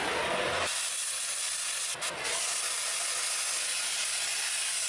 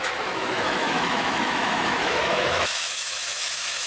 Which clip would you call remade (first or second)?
second